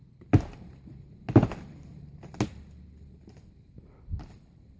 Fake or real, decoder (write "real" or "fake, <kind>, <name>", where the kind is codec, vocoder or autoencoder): real